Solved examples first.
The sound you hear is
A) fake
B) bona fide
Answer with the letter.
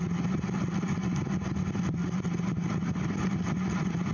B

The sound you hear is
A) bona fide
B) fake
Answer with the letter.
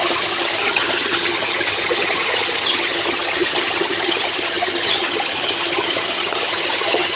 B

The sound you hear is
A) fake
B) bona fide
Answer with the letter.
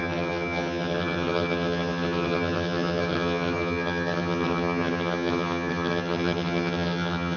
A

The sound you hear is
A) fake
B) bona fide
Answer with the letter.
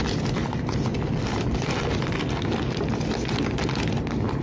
B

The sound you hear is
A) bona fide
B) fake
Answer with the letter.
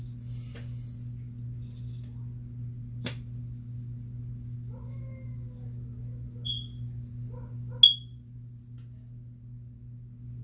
A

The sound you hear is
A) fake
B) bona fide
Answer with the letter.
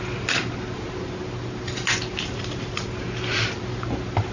B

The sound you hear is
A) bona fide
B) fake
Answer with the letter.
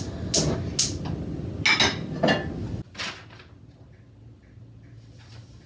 A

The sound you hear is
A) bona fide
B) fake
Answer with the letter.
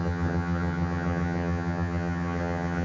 B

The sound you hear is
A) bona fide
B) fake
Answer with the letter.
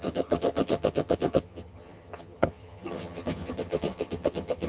B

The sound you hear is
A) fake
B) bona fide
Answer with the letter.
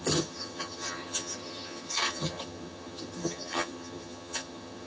A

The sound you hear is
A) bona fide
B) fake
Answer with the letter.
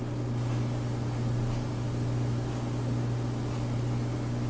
A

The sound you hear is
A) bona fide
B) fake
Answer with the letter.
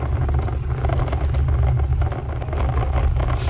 A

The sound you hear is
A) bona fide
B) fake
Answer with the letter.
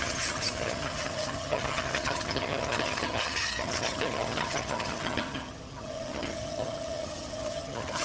B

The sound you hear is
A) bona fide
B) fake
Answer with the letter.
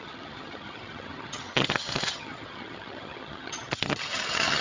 B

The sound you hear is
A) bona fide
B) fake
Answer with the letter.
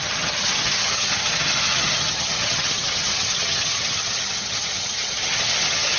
B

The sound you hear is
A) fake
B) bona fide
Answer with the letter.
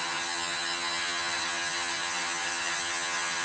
A